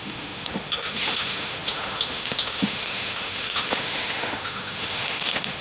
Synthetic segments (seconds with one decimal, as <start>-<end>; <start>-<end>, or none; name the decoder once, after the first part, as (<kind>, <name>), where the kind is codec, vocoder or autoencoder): 0.0-5.6 (autoencoder, DAC-VAE)